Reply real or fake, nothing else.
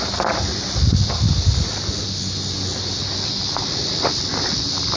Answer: real